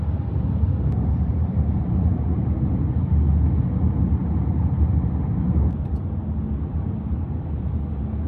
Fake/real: real